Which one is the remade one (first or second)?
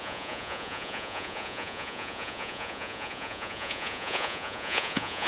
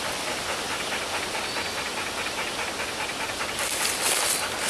first